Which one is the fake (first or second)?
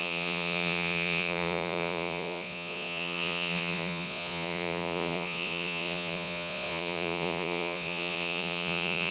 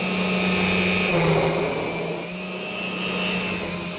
first